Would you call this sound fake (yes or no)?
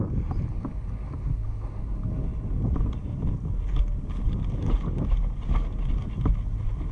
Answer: no